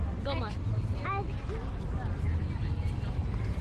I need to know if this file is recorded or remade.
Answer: recorded